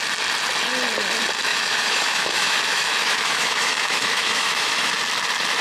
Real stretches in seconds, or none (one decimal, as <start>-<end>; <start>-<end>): 0.0-1.5; 4.9-5.6